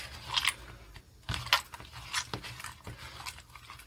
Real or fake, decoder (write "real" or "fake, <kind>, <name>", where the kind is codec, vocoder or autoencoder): real